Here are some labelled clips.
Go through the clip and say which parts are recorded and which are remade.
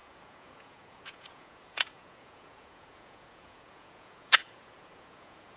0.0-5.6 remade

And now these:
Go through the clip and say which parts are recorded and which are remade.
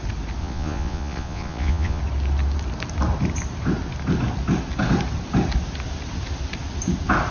0.0-0.4 recorded; 0.4-2.0 remade; 2.0-7.3 recorded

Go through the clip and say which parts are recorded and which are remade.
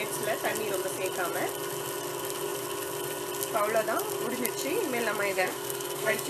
0.0-5.3 recorded; 5.3-6.3 remade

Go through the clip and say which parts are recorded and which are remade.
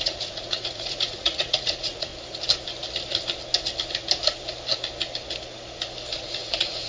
0.0-2.1 remade; 2.1-6.2 recorded; 6.2-6.9 remade